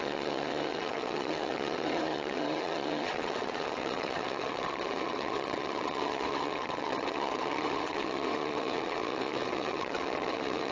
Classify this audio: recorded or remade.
remade